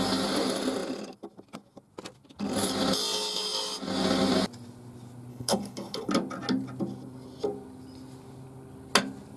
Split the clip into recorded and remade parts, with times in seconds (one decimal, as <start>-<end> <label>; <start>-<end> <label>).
0.0-5.3 recorded; 5.3-6.1 remade; 6.1-9.4 recorded